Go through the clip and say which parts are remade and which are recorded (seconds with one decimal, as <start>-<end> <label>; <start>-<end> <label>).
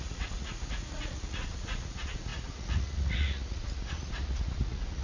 0.0-5.0 remade